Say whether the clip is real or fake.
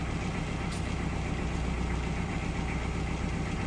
real